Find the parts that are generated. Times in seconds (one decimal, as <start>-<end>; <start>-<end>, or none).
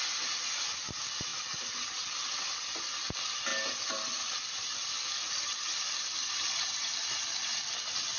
0.0-1.3; 2.8-3.5